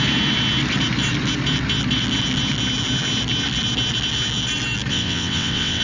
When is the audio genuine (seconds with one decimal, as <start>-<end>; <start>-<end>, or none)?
0.0-4.9